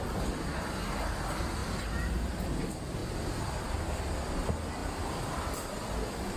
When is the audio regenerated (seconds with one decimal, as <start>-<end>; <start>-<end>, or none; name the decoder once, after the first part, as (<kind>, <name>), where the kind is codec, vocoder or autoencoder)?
4.8-5.5 (vocoder, BigVGAN v2)